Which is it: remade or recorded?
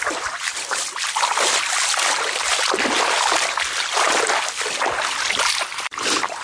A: recorded